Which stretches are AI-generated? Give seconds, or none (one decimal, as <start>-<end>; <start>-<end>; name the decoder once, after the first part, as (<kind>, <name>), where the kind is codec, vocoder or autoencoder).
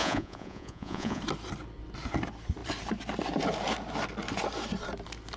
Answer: 0.0-1.2 (vocoder, Vocos)